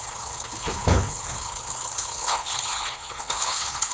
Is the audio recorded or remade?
remade